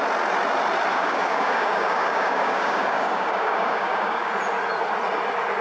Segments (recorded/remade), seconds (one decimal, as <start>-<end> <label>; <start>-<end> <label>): 0.0-0.9 recorded; 0.9-4.3 remade; 4.3-5.6 recorded